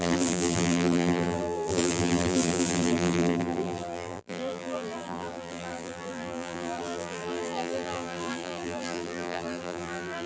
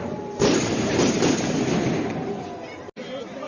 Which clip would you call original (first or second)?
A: second